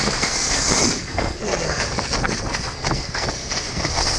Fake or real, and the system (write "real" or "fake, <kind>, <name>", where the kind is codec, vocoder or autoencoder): fake, codec, SNAC